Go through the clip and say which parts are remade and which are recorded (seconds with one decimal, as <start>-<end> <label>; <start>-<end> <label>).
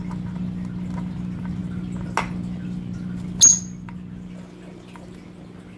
0.0-5.8 recorded